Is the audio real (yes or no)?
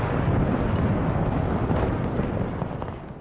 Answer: yes